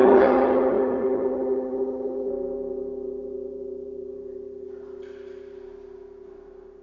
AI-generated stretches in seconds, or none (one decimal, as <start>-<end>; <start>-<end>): 0.0-2.3